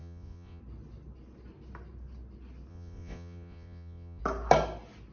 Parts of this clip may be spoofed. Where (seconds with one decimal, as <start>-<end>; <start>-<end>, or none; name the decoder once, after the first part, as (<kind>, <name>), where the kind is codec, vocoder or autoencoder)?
0.0-0.6 (vocoder, Vocos); 2.7-4.2